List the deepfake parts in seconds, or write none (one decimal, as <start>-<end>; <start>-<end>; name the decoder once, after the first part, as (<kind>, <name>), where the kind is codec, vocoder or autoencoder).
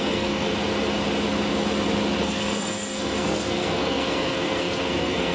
0.0-0.5 (codec, SNAC); 2.2-5.3